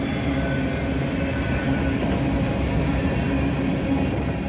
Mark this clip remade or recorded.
recorded